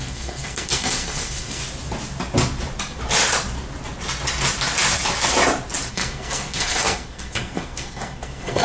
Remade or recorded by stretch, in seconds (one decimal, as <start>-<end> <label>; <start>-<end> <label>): 0.0-1.6 remade; 1.6-5.9 recorded; 5.9-8.6 remade